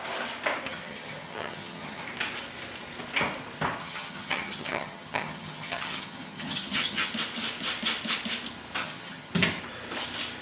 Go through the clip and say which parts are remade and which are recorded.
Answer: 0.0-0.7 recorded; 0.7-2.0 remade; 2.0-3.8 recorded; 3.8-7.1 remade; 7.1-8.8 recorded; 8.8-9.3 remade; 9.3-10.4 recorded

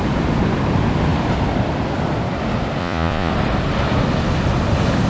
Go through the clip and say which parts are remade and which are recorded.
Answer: 0.0-2.8 recorded; 2.8-3.3 remade; 3.3-5.1 recorded

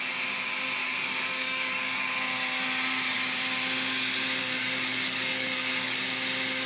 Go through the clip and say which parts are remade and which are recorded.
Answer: 0.0-0.8 recorded; 0.8-2.1 remade; 2.1-4.4 recorded; 4.4-6.0 remade; 6.0-6.7 recorded

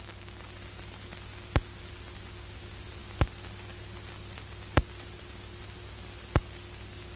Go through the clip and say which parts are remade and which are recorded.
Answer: 0.0-7.2 recorded

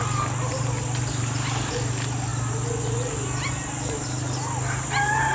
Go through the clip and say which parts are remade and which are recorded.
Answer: 0.0-5.3 recorded

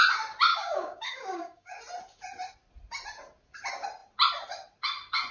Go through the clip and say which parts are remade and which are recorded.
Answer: 0.0-0.5 recorded; 0.5-1.8 remade; 1.8-5.3 recorded